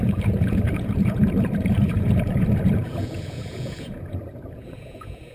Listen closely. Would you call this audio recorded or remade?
remade